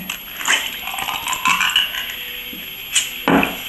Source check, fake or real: real